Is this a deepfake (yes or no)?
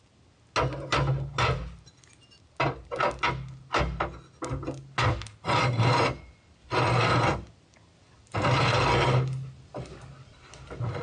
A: no